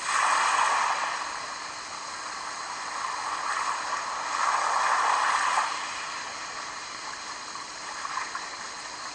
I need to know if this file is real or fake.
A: real